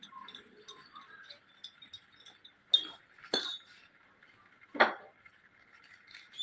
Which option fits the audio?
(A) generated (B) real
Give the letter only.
B